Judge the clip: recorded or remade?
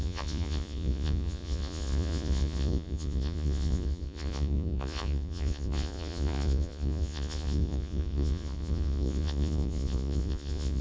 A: remade